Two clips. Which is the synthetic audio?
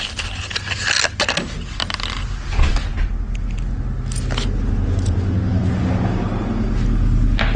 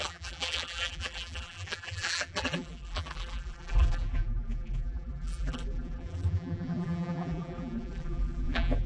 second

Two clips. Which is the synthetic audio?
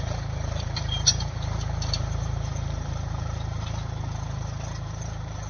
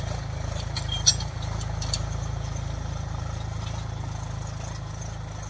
first